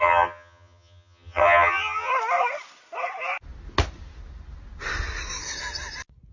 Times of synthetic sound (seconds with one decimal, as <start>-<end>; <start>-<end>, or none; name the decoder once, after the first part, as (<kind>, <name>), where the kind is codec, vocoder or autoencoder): 0.0-2.1 (vocoder, HiFi-GAN)